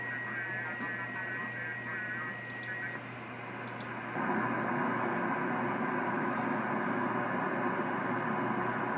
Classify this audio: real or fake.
real